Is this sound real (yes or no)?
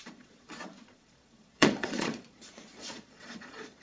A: no